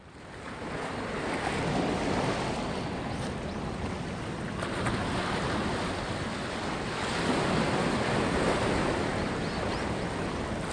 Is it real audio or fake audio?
real